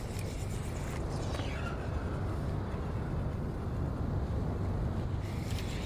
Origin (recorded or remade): recorded